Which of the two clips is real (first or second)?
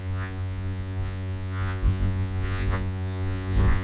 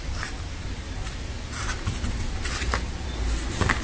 second